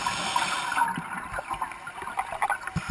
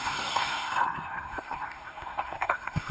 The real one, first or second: first